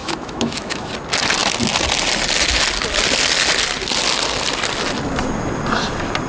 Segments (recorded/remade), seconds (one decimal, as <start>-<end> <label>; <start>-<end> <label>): 0.0-0.9 remade; 0.9-6.3 recorded